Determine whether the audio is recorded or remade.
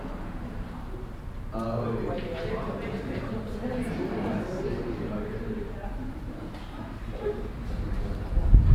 remade